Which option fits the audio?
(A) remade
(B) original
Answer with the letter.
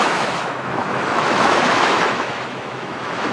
A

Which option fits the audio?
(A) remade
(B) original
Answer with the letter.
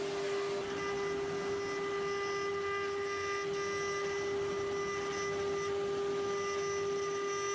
B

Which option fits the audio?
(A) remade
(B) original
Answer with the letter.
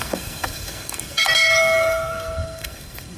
A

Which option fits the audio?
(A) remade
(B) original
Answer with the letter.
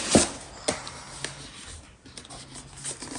B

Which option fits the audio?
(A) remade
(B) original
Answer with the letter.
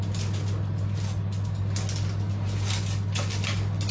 B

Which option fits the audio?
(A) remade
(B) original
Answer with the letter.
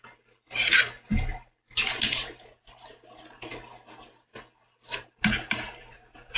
B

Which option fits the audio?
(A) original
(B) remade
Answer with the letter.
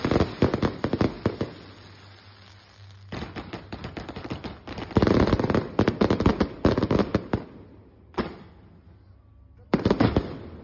A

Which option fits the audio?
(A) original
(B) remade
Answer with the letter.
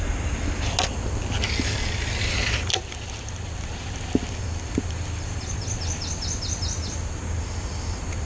A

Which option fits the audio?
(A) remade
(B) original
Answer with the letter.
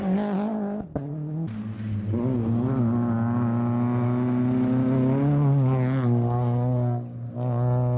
B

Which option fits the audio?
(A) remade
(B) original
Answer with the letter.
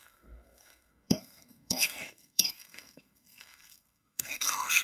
A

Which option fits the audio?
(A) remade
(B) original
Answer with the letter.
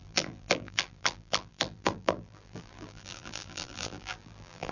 A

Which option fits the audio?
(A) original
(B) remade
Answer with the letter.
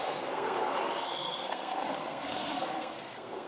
B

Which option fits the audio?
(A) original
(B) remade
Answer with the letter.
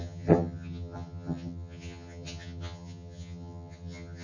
B